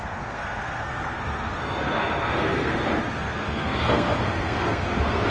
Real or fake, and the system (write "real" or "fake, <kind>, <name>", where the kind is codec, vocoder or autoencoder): fake, codec, SNAC